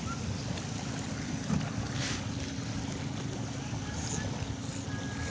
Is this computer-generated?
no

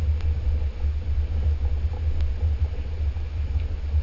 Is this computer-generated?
no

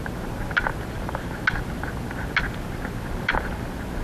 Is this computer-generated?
no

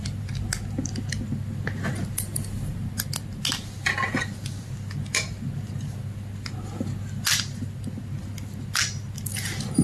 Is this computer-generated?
no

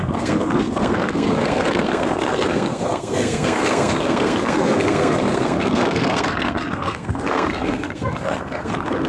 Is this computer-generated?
yes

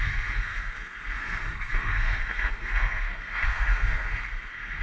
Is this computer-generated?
yes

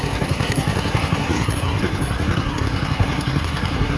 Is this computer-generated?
yes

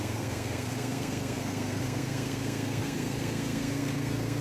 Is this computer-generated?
yes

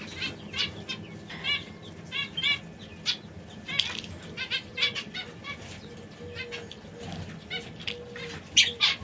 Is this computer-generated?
no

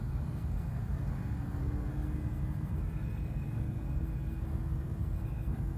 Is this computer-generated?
yes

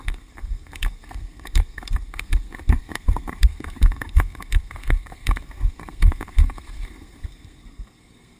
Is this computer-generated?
yes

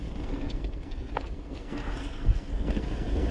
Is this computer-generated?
yes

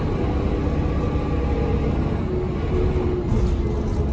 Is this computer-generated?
no